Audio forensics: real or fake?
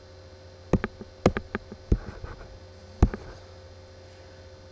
real